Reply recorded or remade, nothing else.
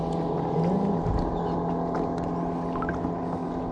recorded